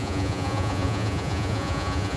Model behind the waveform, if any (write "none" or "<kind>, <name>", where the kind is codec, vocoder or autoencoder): vocoder, Vocos